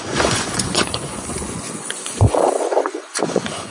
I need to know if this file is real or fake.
fake